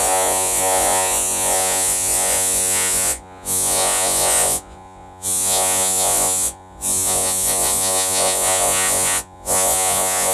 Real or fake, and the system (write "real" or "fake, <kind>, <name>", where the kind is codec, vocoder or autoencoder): fake, vocoder, Vocos